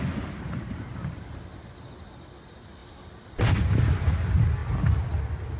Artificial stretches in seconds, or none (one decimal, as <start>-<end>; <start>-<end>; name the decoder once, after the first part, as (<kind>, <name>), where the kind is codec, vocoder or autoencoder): 2.8-3.5 (vocoder, BigVGAN v2)